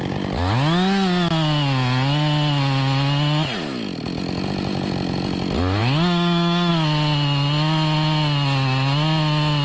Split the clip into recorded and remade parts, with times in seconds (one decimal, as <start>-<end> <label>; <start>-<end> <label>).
0.0-5.8 recorded; 5.8-6.7 remade; 6.7-9.6 recorded

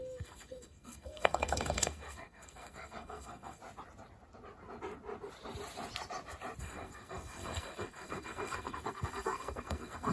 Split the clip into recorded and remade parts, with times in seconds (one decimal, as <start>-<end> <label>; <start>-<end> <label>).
0.0-3.6 remade; 3.6-6.6 recorded; 6.6-10.1 remade

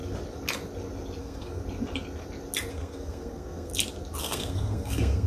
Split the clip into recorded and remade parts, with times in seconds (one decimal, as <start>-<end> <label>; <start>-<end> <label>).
0.0-1.2 recorded; 1.2-1.6 remade; 1.6-2.7 recorded; 2.7-3.7 remade; 3.7-4.2 recorded; 4.2-5.3 remade

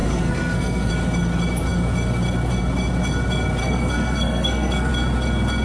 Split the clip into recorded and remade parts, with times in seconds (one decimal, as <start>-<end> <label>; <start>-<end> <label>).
0.0-0.9 remade; 0.9-3.6 recorded; 3.6-4.9 remade; 4.9-5.6 recorded

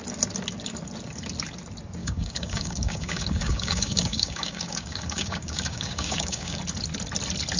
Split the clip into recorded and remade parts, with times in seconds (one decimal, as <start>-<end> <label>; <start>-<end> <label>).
0.0-2.0 recorded; 2.0-6.6 remade; 6.6-7.6 recorded